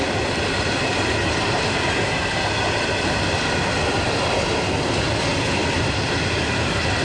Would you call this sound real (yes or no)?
yes